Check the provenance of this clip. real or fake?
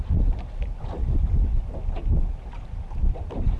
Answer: real